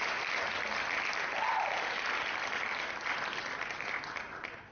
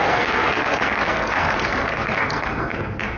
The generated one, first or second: second